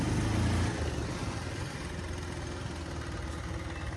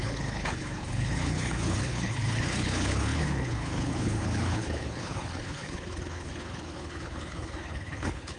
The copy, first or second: second